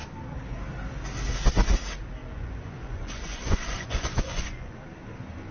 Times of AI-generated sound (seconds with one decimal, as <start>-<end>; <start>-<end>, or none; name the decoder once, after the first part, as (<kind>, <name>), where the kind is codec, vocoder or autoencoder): 2.2-4.8 (vocoder, Vocos)